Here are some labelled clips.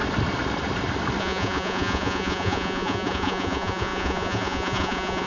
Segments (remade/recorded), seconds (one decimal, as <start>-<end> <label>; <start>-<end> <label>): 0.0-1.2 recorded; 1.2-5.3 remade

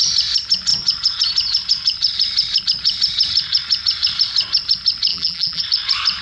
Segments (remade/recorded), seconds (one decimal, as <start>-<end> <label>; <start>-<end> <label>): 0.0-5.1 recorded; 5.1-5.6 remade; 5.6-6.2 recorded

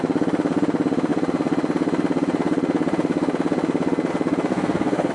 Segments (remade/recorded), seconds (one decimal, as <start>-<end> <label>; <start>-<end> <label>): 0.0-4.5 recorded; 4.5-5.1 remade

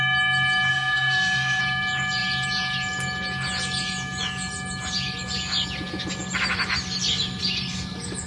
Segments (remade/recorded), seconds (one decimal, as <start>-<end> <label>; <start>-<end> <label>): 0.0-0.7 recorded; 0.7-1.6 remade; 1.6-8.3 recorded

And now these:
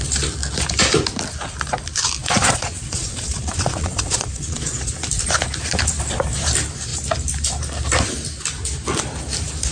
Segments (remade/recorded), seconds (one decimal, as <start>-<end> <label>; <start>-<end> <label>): 0.0-2.2 recorded; 2.2-4.9 remade; 4.9-9.7 recorded

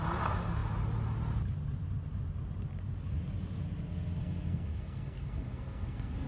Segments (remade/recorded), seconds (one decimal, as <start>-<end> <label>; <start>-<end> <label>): 0.0-4.2 recorded; 4.2-6.3 remade

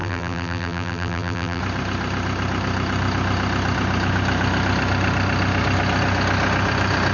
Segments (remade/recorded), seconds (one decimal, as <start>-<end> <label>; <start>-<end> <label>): 0.0-1.6 remade; 1.6-7.1 recorded